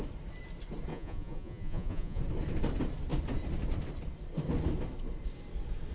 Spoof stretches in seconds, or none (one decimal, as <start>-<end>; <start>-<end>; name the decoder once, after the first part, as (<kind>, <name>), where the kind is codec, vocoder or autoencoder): 0.9-2.2 (vocoder, Vocos)